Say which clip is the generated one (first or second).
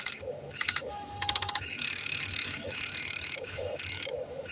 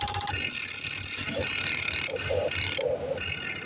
first